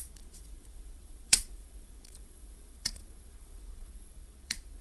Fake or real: fake